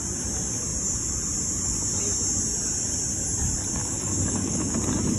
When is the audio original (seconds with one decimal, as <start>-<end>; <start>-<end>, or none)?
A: 0.0-3.8; 4.7-5.2